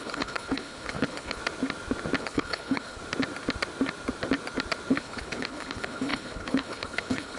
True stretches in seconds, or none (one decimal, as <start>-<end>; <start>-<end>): 1.4-2.2; 3.0-4.9